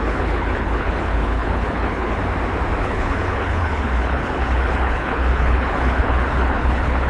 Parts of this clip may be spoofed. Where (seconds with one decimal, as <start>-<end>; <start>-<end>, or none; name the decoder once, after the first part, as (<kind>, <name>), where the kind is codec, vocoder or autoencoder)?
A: 0.0-2.2 (codec, HILCodec); 2.8-7.1